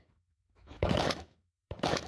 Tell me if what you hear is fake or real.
fake